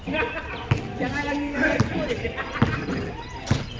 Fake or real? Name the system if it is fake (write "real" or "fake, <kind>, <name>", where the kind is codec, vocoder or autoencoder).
real